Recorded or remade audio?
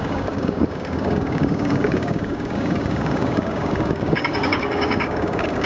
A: remade